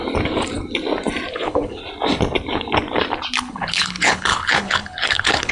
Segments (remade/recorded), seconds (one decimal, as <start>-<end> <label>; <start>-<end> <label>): 0.0-1.3 recorded; 1.3-1.8 remade; 1.8-3.5 recorded; 3.5-5.5 remade

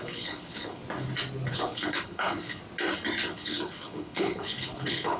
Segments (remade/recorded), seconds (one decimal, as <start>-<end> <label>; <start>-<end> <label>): 0.0-0.8 remade; 0.8-1.5 recorded; 1.5-2.6 remade; 2.6-3.3 recorded; 3.3-5.2 remade

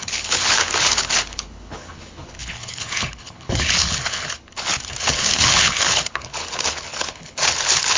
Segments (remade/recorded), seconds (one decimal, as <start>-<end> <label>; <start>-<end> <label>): 0.0-8.0 remade

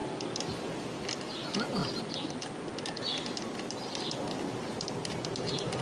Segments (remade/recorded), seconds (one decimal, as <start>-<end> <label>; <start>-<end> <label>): 0.0-5.8 recorded

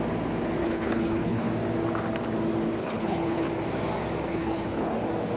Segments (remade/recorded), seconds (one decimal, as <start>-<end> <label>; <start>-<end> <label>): 0.0-0.6 recorded; 0.6-1.5 remade; 1.5-2.8 recorded; 2.8-3.5 remade; 3.5-4.3 recorded; 4.3-4.9 remade; 4.9-5.4 recorded

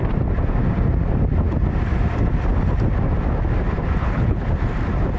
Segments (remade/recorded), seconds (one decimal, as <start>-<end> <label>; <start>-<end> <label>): 0.0-4.0 recorded; 4.0-4.5 remade; 4.5-5.2 recorded

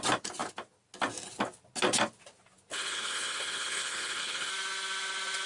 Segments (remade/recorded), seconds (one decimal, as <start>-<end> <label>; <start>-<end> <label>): 0.0-2.7 recorded; 2.7-4.5 remade; 4.5-5.5 recorded